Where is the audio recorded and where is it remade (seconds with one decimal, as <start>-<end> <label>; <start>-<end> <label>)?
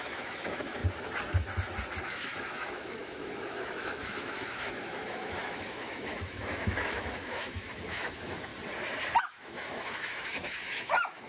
0.0-0.8 remade; 0.8-2.0 recorded; 2.0-8.5 remade; 8.5-9.2 recorded; 9.2-11.3 remade